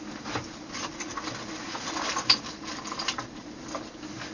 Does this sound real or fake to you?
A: real